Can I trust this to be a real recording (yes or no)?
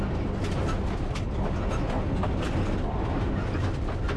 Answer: yes